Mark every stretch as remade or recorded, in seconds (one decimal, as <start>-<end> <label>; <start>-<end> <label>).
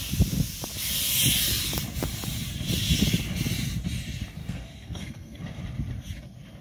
0.0-4.4 recorded; 4.4-5.6 remade; 5.6-6.6 recorded